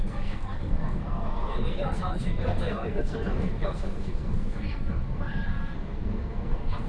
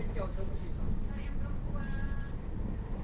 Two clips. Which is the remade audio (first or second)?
first